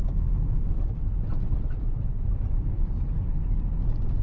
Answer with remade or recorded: remade